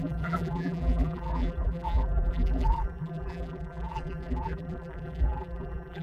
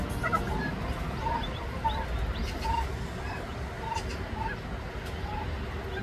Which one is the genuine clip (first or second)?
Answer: second